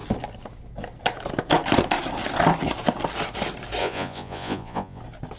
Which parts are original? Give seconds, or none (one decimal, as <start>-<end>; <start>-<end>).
0.0-3.8; 5.0-5.4